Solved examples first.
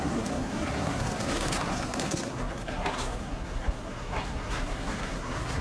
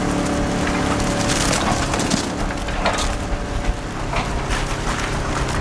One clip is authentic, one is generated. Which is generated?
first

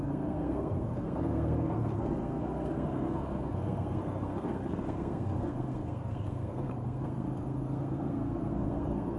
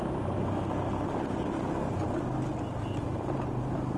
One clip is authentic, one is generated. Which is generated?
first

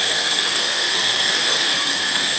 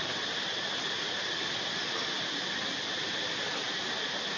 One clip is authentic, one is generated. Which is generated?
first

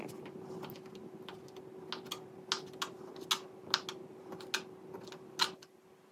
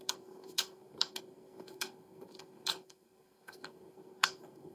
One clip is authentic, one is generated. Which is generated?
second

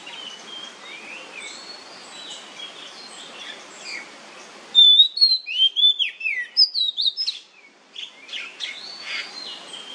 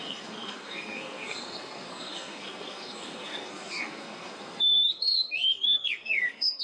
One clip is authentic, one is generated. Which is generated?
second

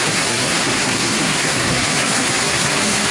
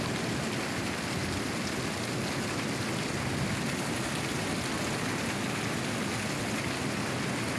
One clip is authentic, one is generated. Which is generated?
first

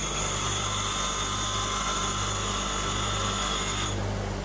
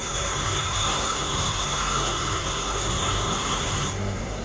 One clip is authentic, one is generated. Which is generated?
second